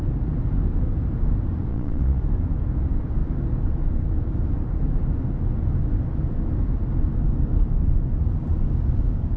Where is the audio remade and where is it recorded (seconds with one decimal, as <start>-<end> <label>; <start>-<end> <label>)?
0.0-1.7 recorded; 1.7-2.2 remade; 2.2-9.4 recorded